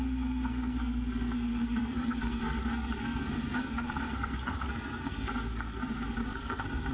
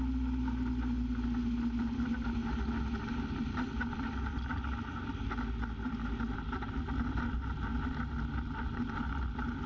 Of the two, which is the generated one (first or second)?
first